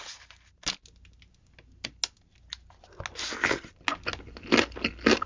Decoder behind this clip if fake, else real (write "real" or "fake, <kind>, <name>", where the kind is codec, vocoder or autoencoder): real